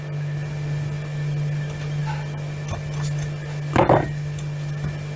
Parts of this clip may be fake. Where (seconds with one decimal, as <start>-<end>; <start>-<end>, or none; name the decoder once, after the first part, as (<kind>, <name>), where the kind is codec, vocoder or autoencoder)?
none